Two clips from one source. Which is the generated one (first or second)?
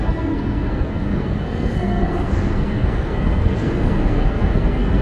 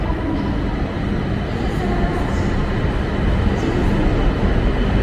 first